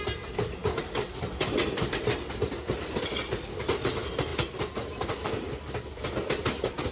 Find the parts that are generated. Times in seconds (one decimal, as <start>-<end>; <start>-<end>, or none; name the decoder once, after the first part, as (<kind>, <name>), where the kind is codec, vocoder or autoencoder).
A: none